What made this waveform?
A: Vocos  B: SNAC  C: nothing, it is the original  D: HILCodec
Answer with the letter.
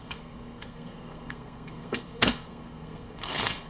B